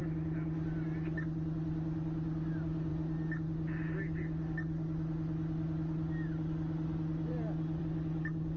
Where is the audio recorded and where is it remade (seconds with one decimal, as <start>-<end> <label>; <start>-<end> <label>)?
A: 0.0-8.6 recorded

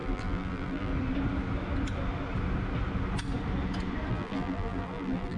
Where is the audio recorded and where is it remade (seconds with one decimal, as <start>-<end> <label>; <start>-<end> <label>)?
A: 0.0-0.9 remade; 0.9-4.1 recorded; 4.1-5.4 remade